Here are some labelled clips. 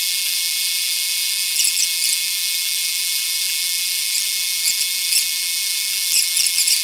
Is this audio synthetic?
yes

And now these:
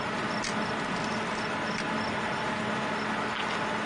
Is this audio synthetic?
no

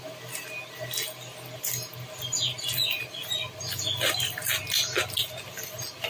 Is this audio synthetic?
no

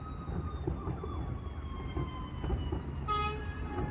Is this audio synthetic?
no